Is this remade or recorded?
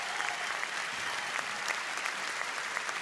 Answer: remade